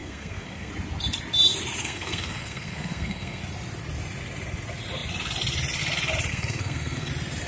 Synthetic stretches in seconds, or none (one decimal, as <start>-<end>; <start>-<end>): 0.0-0.7; 1.8-3.4; 6.3-7.1

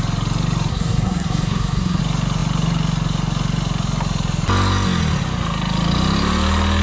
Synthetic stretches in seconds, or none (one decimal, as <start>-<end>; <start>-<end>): 0.7-2.0

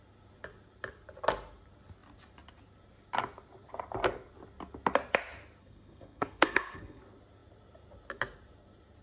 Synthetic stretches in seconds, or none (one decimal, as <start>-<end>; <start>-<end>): 5.6-7.0